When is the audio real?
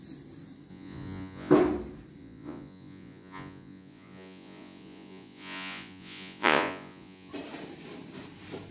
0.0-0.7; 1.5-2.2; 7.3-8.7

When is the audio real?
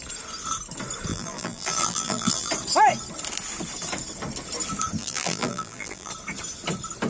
0.0-1.1; 2.5-5.0; 6.1-7.1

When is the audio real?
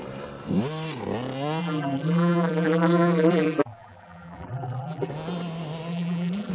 0.0-1.6; 5.1-5.9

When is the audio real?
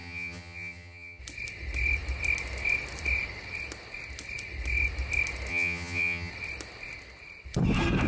1.2-5.5; 6.3-8.1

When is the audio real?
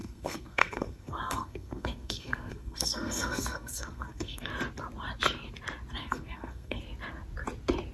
4.5-6.0; 6.8-7.9